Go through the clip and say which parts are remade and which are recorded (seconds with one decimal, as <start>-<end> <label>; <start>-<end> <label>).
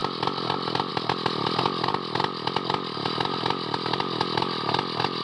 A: 0.0-5.2 recorded